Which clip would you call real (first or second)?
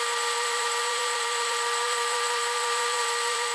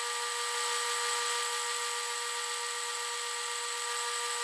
second